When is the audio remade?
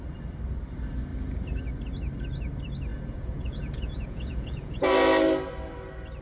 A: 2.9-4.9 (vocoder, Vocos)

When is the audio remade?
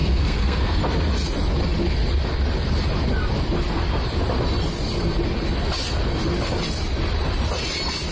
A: 0.0-0.8 (codec, SNAC)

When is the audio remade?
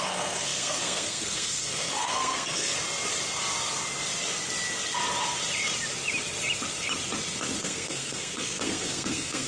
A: 0.0-2.7 (codec, SNAC); 7.6-9.5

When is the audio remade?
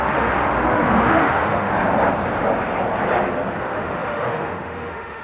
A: 0.0-1.7 (autoencoder, DAC-VAE); 3.6-5.2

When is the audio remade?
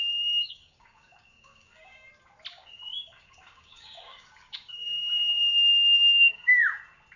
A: 0.0-2.1 (codec, DAC); 2.5-6.8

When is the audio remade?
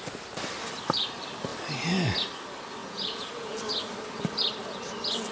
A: 2.8-3.6 (vocoder, Vocos)